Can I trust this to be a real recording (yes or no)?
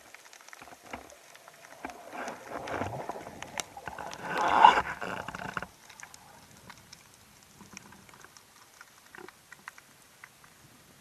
yes